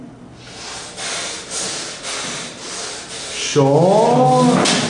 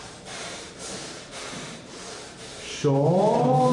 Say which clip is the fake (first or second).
second